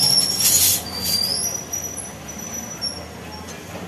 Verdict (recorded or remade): recorded